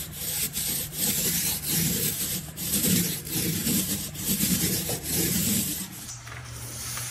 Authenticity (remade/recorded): remade